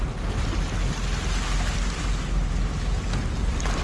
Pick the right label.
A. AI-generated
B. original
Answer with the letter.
B